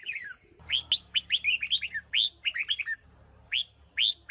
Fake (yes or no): no